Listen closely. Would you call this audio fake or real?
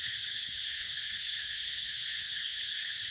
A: fake